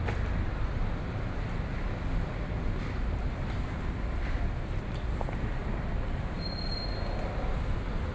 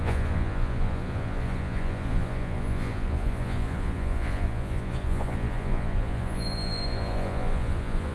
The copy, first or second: second